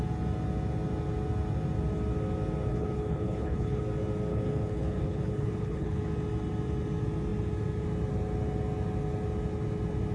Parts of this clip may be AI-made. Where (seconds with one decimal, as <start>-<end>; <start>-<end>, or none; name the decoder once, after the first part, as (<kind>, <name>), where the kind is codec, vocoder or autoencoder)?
2.7-3.8 (codec, HILCodec); 4.3-6.0